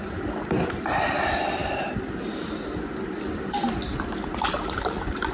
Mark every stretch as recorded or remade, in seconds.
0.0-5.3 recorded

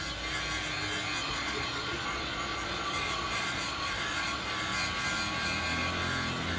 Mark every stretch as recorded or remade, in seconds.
0.0-1.2 recorded; 1.2-4.5 remade; 4.5-6.6 recorded

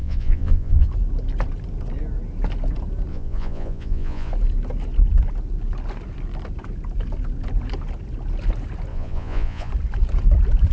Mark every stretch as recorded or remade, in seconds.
0.0-0.9 remade; 0.9-3.1 recorded; 3.1-4.3 remade; 4.3-8.9 recorded; 8.9-9.7 remade; 9.7-10.7 recorded

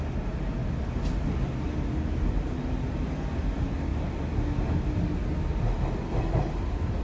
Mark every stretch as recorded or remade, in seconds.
0.0-7.0 recorded

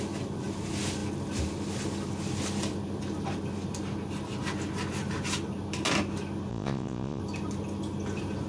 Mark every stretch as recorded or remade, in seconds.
0.0-6.5 recorded; 6.5-7.2 remade; 7.2-8.5 recorded